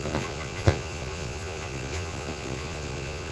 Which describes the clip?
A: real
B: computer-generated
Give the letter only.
B